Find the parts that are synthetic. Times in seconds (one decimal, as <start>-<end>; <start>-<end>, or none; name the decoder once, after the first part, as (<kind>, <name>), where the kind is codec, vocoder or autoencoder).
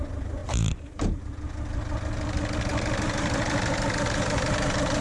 0.4-1.2 (vocoder, BigVGAN v2); 2.7-5.0